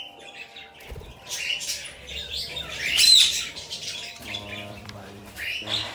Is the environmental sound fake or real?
fake